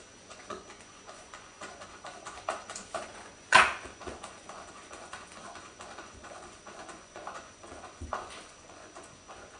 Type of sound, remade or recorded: remade